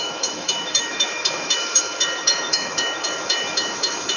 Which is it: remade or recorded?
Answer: remade